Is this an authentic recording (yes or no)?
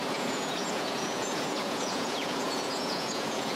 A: no